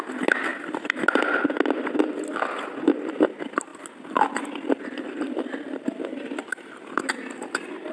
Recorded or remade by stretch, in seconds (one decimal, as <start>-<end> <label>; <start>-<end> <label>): 0.0-7.9 recorded